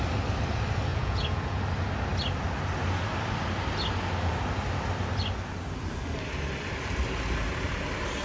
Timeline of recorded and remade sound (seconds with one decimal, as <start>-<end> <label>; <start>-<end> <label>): 0.0-0.9 recorded; 0.9-1.6 remade; 1.6-8.2 recorded

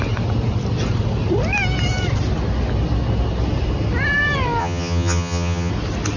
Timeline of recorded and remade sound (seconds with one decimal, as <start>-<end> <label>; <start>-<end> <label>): 0.0-4.6 recorded; 4.6-5.7 remade; 5.7-6.2 recorded